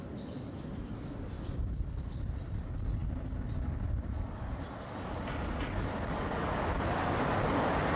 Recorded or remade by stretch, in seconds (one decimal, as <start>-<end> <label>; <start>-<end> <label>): 0.0-8.0 recorded